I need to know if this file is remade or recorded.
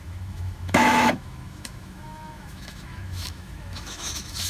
remade